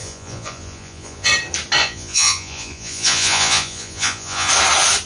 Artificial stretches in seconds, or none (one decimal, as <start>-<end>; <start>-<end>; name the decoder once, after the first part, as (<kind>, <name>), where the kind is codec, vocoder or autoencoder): 0.0-1.3 (vocoder, Vocos); 1.8-4.5